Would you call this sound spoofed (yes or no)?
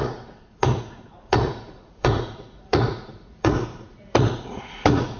yes